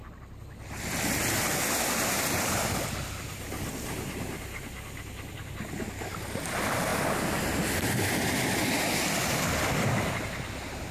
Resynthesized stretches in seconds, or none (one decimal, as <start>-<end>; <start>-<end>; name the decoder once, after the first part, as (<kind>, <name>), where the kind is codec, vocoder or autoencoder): none